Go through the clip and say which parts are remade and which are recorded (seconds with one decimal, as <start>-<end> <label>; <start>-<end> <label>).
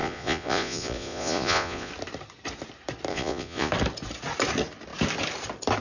0.0-1.9 remade; 1.9-3.1 recorded; 3.1-3.7 remade; 3.7-5.8 recorded